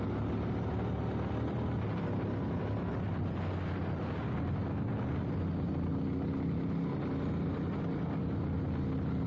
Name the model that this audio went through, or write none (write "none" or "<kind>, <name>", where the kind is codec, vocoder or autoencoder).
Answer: none